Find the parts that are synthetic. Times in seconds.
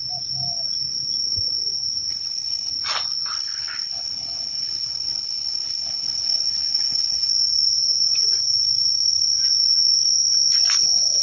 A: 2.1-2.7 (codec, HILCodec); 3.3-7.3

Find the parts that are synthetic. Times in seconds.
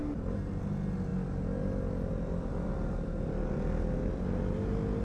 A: none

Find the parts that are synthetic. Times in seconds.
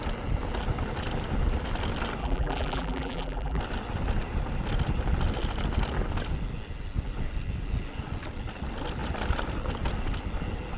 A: 2.2-3.6 (vocoder, BigVGAN v2)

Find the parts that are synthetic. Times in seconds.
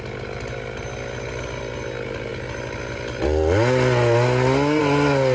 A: none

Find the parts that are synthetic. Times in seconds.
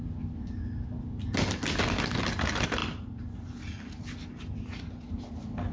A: none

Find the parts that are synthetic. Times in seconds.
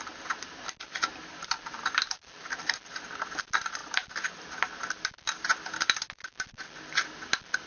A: none